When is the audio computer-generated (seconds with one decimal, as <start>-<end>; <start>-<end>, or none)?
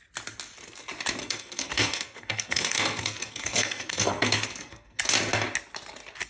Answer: 1.2-5.0